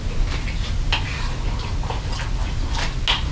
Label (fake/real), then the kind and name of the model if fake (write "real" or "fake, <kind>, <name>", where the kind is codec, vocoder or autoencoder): real